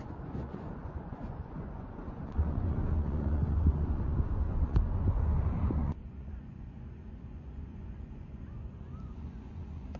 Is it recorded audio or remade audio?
remade